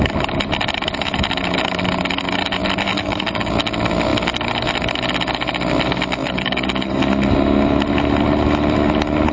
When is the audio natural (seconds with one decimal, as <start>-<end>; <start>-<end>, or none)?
0.0-2.9; 3.5-6.2; 7.0-9.3